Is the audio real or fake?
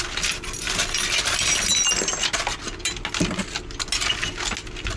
real